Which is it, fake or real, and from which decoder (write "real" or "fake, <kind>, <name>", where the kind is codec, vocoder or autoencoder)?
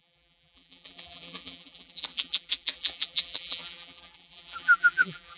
fake, vocoder, BigVGAN v2